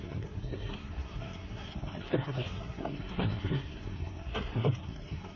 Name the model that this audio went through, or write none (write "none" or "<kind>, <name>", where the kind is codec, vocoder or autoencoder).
codec, SNAC